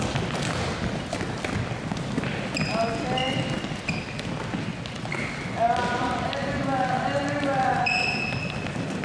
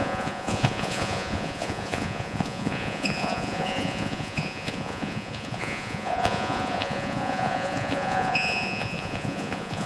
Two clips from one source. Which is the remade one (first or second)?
second